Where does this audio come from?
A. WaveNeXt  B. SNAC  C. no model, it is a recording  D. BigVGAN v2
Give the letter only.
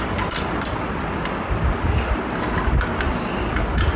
C